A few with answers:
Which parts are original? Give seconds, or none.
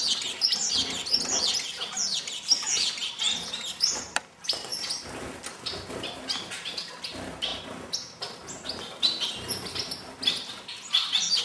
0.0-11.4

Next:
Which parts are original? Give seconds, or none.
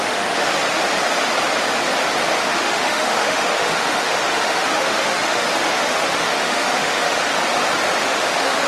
0.4-2.4; 7.2-8.0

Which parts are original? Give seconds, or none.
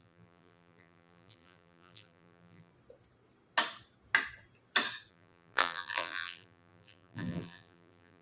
2.7-5.1